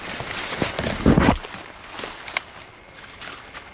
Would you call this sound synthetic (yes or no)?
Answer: no